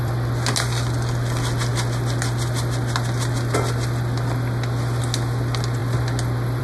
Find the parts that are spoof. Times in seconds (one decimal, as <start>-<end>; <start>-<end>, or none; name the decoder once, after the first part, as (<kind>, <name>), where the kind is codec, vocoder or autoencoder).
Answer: none